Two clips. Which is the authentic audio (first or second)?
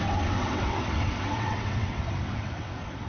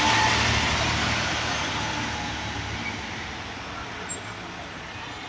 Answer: second